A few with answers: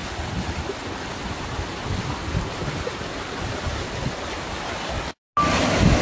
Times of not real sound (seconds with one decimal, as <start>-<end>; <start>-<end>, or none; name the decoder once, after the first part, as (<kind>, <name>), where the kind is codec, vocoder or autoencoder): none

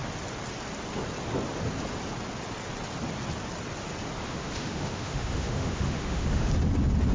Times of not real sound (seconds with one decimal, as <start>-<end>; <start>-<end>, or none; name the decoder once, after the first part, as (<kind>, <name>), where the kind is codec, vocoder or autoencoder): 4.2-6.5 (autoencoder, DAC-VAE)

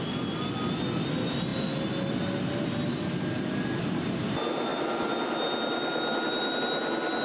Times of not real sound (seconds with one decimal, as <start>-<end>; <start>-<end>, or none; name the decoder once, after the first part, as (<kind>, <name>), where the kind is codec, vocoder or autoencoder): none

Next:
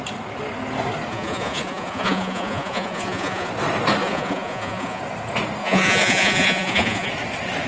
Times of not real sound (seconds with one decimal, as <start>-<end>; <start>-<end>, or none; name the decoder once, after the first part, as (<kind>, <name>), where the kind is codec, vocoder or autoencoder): 1.1-3.5 (vocoder, Vocos); 4.0-5.0; 5.6-7.1